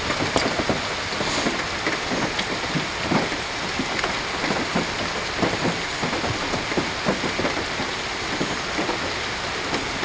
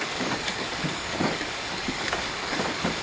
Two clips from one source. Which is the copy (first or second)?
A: second